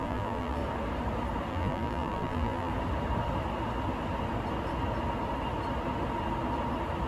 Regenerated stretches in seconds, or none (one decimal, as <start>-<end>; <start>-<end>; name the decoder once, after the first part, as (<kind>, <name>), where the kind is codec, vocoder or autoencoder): 0.0-0.6 (vocoder, BigVGAN v2); 1.5-2.7